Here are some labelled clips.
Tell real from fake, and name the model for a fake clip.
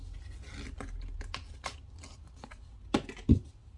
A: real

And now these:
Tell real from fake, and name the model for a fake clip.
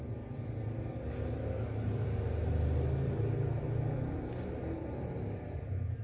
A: real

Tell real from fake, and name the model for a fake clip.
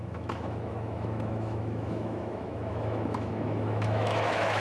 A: fake, autoencoder, DAC-VAE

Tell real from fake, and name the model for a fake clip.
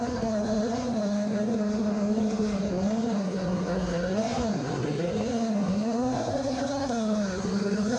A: fake, codec, SNAC